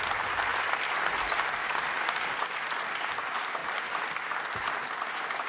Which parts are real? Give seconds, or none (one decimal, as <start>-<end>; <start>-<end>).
0.0-1.6; 2.3-5.5